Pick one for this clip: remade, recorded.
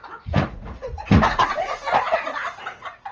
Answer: remade